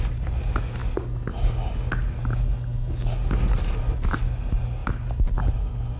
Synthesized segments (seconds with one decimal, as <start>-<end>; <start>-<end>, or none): none